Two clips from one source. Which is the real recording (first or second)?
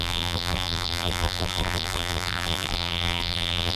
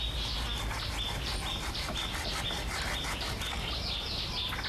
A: second